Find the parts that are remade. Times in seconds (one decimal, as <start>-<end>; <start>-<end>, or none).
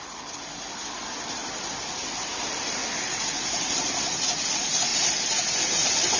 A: none